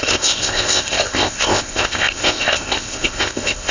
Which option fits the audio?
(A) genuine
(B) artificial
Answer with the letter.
B